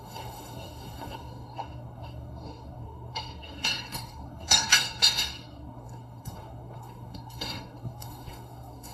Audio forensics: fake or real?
fake